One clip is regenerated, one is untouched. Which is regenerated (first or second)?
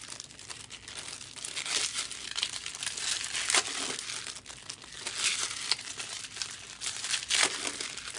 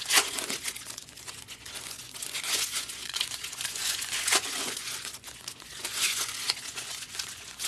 second